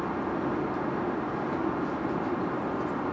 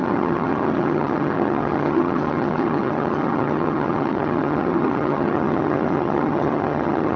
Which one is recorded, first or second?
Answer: first